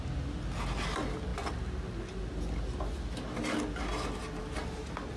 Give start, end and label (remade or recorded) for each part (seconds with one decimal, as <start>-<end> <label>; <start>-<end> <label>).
0.0-5.2 recorded